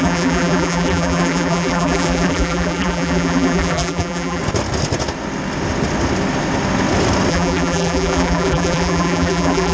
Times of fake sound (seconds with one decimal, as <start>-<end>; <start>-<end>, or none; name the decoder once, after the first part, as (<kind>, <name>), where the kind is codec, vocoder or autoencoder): 0.0-4.4 (vocoder, BigVGAN v2); 7.3-9.7